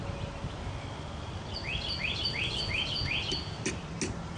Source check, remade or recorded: recorded